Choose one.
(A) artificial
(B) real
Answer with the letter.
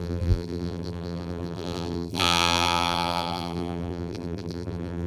A